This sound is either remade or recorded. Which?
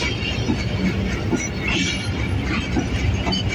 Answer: recorded